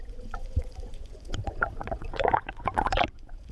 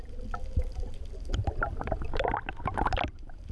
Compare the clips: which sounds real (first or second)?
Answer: second